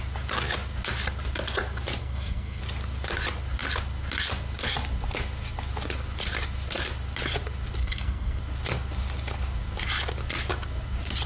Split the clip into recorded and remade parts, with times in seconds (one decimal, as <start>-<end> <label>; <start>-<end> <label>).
0.0-2.0 recorded; 2.0-2.6 remade; 2.6-7.8 recorded; 7.8-8.4 remade; 8.4-11.3 recorded